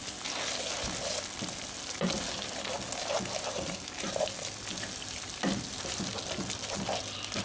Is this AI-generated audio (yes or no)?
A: no